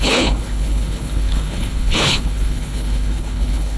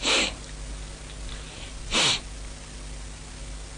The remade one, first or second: first